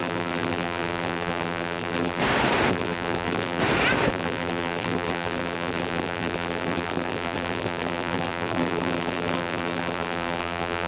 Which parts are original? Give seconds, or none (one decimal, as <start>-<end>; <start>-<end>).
2.2-2.7; 3.6-4.1